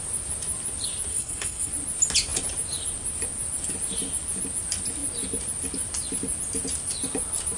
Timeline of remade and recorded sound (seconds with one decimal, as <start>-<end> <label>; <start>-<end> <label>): 0.0-1.1 recorded; 1.1-1.7 remade; 1.7-7.6 recorded